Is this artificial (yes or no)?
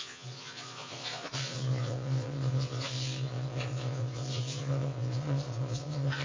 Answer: yes